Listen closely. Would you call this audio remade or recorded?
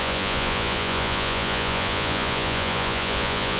remade